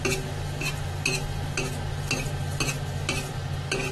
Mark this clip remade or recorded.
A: recorded